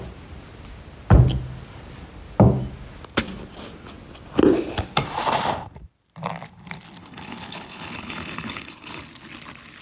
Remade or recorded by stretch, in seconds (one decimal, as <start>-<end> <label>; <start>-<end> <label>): 0.0-7.0 recorded; 7.0-9.0 remade; 9.0-9.8 recorded